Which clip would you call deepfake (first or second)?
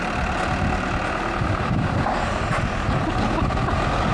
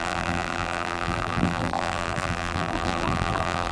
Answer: second